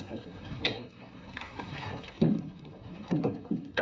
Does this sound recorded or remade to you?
remade